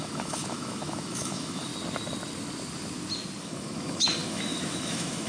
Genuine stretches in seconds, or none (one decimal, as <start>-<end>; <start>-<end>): 1.7-3.4